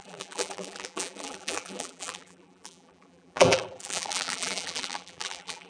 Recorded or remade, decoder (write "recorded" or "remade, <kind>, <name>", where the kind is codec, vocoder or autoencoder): remade, vocoder, BigVGAN v2